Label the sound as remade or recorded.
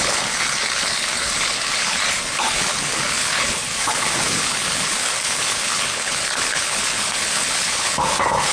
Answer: remade